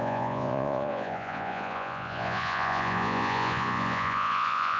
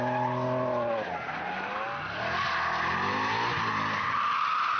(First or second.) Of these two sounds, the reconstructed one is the first